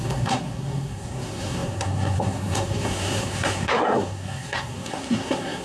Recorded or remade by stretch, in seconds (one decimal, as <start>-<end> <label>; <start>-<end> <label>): 0.0-5.6 remade